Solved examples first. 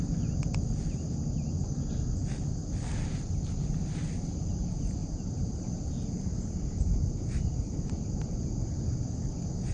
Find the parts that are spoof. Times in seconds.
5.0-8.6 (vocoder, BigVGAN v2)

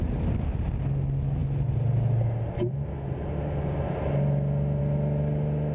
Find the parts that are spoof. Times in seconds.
none